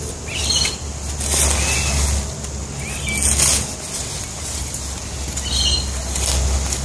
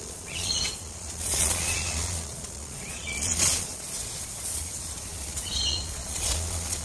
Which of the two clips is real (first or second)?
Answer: first